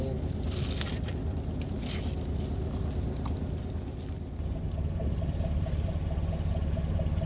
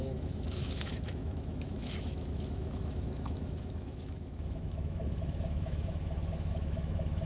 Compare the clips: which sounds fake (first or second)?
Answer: second